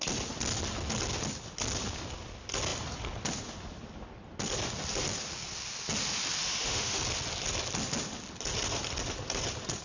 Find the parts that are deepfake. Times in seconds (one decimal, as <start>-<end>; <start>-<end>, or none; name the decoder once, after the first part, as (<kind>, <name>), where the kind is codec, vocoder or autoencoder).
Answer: 6.4-7.0 (autoencoder, DAC-VAE)